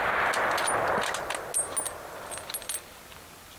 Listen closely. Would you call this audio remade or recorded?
recorded